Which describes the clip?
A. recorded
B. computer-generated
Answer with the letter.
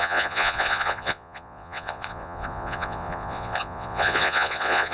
B